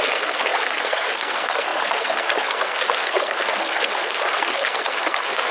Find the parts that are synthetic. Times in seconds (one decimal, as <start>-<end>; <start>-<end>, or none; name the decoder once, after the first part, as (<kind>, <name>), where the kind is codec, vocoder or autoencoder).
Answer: 0.0-5.5 (codec, SNAC)